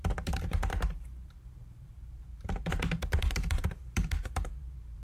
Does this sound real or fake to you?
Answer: fake